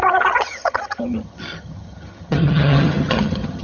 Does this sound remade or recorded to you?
remade